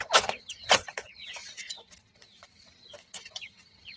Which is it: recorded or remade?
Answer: remade